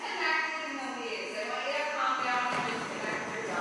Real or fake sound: real